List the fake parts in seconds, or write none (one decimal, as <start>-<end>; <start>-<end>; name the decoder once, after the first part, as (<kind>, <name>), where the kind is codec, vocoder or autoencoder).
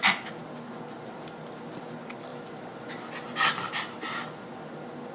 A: none